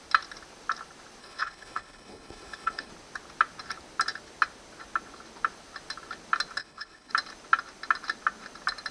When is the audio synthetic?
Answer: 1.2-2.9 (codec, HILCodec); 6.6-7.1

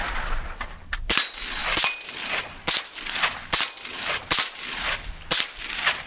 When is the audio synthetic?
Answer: none

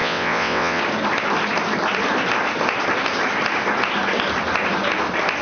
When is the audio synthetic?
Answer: 0.0-0.8 (vocoder, WaveNeXt)

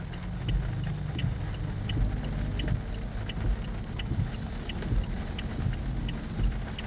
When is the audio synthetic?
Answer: none

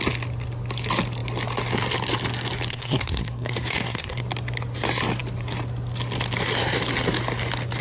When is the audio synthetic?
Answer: 2.7-4.2 (codec, SNAC)

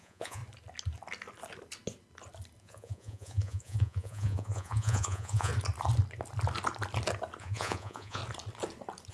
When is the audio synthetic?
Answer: 0.0-0.4 (vocoder, Vocos); 2.6-5.5; 7.4-8.2